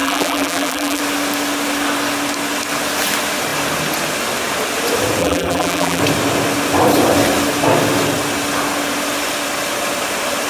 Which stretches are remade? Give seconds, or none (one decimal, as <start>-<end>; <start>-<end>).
0.0-1.0; 5.2-6.0